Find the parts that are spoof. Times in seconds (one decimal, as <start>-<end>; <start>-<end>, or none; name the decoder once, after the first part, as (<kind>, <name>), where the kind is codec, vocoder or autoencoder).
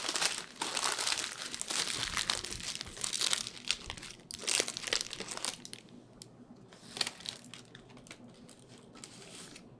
none